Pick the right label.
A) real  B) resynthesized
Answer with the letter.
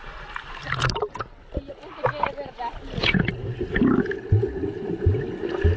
A